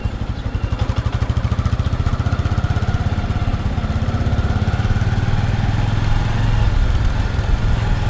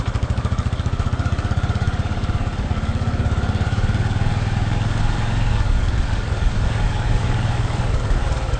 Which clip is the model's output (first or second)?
second